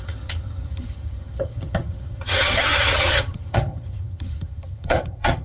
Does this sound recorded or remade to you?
remade